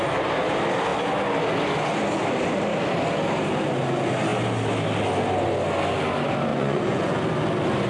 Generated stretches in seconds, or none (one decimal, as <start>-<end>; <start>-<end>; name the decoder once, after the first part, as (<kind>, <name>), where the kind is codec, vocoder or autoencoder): 6.5-7.2 (vocoder, Vocos)